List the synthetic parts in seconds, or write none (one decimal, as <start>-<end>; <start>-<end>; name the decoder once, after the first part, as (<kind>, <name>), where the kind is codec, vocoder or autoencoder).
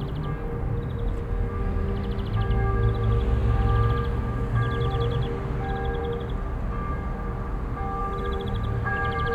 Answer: 8.0-9.3 (vocoder, BigVGAN v2)